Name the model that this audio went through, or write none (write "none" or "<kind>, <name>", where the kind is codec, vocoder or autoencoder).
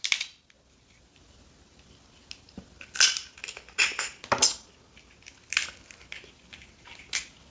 none